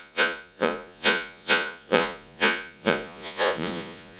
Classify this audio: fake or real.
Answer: fake